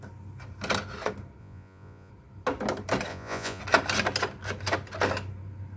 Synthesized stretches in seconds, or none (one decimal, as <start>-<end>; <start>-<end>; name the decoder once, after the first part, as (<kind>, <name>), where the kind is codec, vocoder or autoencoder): 1.4-2.1 (vocoder, Vocos); 3.1-3.6